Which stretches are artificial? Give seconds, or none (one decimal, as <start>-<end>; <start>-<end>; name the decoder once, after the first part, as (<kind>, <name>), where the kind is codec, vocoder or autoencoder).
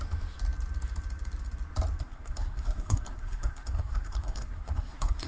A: 2.0-5.3 (codec, SNAC)